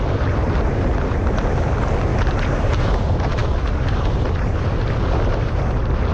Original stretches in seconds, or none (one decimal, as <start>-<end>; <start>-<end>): 0.0-6.1

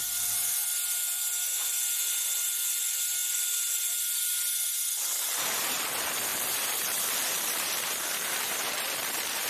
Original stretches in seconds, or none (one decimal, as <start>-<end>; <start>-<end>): 0.0-6.3; 8.7-9.5

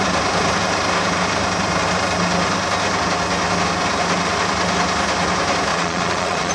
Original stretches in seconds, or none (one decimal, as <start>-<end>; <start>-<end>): 0.0-5.7